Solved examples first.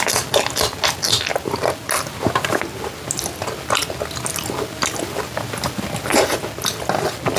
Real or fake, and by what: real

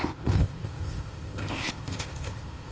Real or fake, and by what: fake, codec, ZipCodec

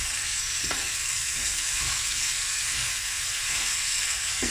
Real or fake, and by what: fake, codec, SNAC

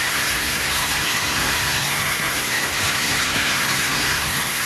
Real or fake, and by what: fake, codec, SNAC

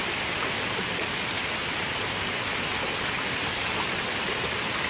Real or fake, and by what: real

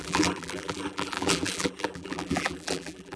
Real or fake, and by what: fake, vocoder, BigVGAN v2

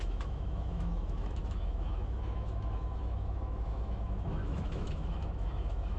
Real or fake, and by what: fake, autoencoder, DAC-VAE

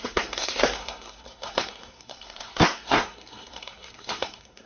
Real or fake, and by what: fake, codec, SNAC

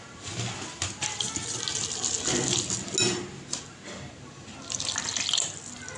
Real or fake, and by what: real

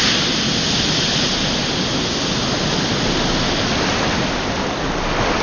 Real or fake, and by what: real